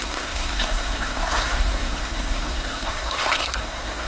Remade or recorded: remade